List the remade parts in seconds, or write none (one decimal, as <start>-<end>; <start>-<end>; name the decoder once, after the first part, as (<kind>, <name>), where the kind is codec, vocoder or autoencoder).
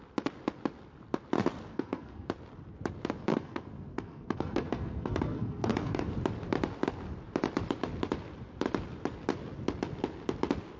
1.7-2.3 (codec, SNAC); 3.3-6.1